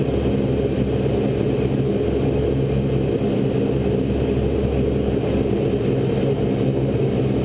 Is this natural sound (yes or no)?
yes